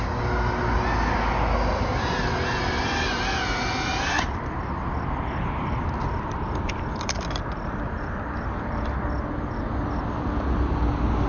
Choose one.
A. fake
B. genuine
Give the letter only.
B